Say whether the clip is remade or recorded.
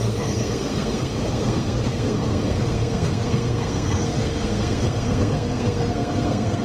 remade